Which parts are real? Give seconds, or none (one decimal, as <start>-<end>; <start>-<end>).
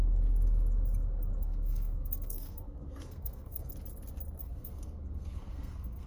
0.0-1.3; 3.7-4.4